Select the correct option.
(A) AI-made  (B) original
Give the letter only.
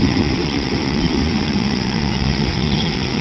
A